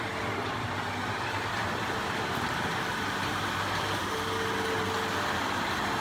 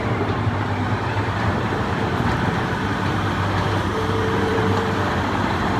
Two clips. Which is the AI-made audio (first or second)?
second